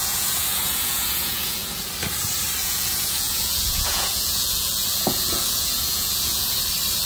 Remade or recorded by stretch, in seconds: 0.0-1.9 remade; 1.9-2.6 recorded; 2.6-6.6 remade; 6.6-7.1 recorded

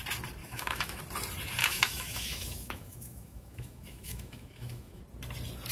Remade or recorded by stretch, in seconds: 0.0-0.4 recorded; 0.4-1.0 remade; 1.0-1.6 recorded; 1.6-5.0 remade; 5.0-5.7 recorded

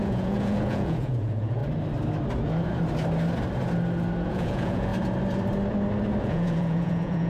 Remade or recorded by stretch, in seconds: 0.0-1.6 remade; 1.6-4.3 recorded; 4.3-4.9 remade; 4.9-6.2 recorded; 6.2-7.3 remade

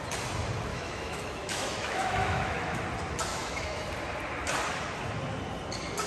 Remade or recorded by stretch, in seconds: 0.0-0.7 recorded; 0.7-2.8 remade; 2.8-3.3 recorded; 3.3-3.9 remade; 3.9-6.1 recorded

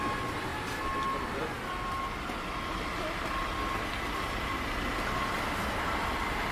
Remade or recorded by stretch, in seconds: 0.0-6.5 recorded